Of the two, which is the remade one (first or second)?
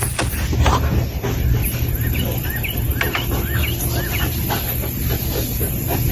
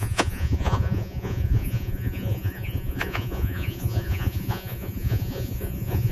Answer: second